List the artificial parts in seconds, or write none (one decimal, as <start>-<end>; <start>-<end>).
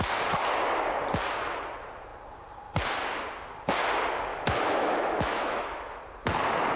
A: 4.3-6.0